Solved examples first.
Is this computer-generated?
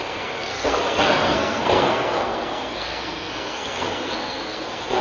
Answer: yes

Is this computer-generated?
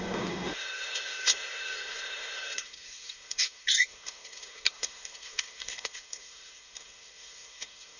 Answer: yes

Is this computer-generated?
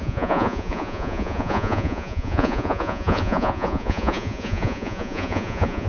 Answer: yes